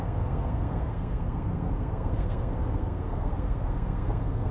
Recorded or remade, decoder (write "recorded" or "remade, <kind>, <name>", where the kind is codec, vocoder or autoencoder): remade, codec, SNAC